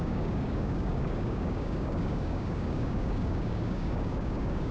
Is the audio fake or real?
fake